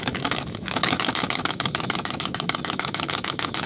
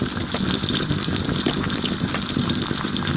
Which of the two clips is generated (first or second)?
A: first